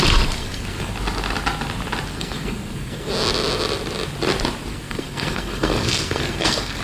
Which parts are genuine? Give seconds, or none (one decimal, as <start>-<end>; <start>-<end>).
0.0-0.4; 0.9-2.1; 3.1-4.7